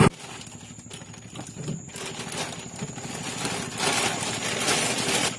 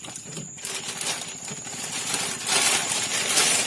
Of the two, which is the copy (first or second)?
second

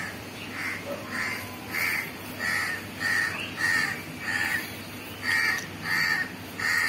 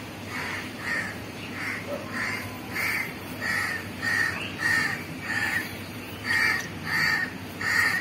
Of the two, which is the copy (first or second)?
second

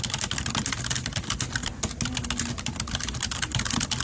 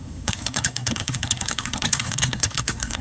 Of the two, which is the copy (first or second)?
second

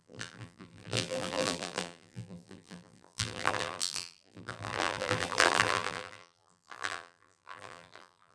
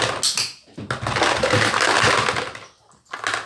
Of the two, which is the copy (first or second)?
first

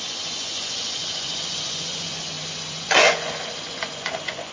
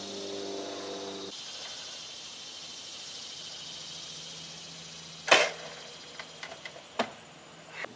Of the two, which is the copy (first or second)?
first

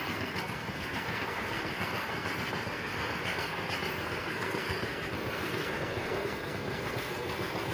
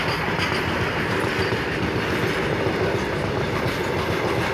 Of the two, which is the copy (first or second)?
first